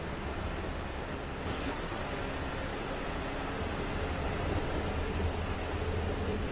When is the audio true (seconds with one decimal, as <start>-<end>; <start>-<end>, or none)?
0.0-1.5; 2.0-6.5